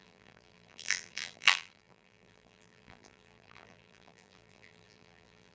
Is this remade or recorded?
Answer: remade